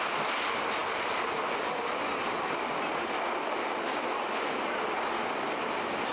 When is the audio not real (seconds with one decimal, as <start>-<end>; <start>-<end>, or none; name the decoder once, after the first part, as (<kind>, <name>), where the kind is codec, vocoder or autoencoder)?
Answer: none